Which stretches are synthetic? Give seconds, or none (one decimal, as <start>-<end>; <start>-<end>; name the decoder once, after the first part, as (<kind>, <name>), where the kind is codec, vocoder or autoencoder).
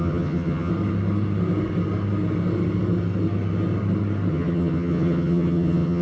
0.0-0.7 (vocoder, HiFi-GAN); 4.3-6.0